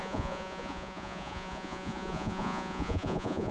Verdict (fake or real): fake